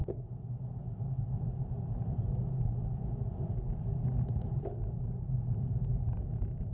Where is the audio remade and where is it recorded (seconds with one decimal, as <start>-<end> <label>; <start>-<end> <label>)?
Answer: 0.0-6.7 recorded